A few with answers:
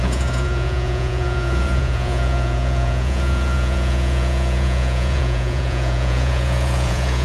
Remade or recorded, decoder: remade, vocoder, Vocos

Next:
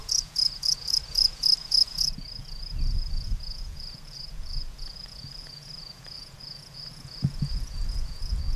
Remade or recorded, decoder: remade, vocoder, Vocos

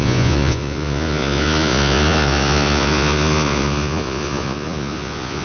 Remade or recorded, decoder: remade, vocoder, Vocos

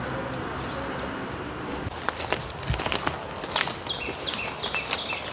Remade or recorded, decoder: recorded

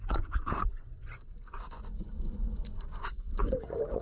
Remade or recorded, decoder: remade, vocoder, Vocos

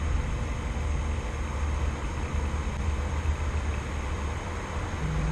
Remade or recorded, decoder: recorded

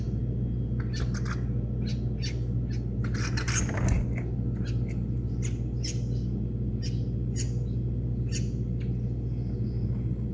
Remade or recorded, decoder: recorded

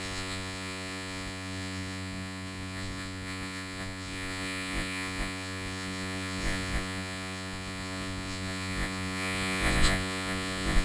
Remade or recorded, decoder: remade, vocoder, Vocos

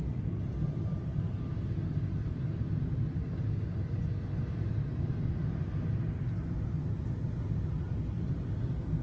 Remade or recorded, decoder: recorded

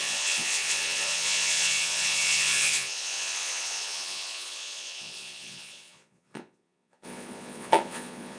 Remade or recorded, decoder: remade, vocoder, Vocos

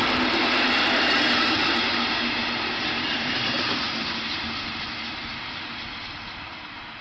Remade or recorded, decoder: recorded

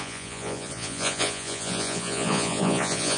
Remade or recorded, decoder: remade, vocoder, Vocos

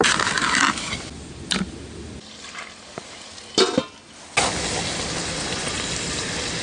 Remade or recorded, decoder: recorded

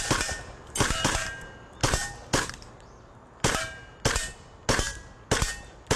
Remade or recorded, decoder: recorded